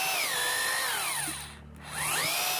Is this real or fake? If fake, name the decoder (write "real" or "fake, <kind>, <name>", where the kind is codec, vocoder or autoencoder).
real